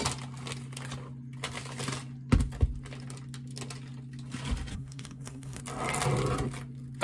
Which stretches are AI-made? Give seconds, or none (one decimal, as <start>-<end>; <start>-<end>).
4.7-5.6